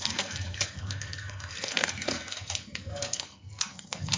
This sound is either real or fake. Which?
fake